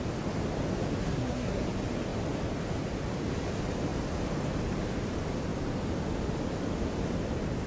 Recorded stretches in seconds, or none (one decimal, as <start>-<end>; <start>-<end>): 0.0-1.0; 1.6-7.7